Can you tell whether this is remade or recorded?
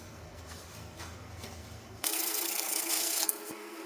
remade